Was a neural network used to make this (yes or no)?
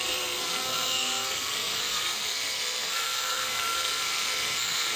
yes